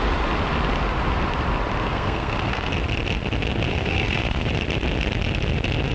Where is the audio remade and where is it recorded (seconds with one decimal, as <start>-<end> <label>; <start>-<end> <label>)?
0.0-1.9 recorded; 1.9-2.7 remade; 2.7-3.7 recorded; 3.7-4.5 remade; 4.5-5.9 recorded